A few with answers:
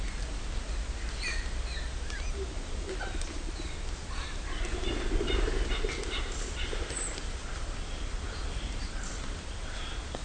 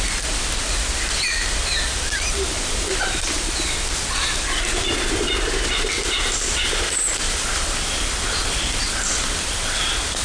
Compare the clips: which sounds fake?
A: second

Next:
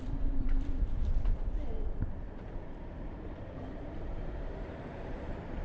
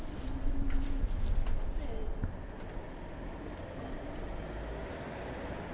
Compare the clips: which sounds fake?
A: first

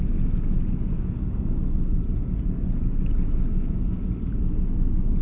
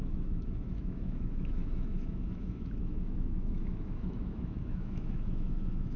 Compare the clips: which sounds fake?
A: second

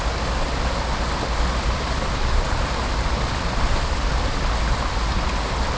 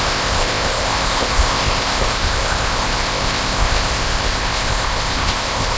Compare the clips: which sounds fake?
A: second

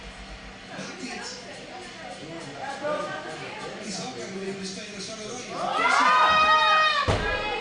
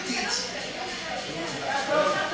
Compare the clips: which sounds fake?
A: second